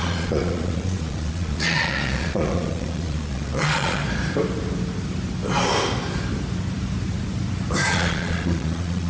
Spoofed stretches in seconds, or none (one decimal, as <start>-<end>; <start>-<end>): 0.0-4.0; 7.9-9.1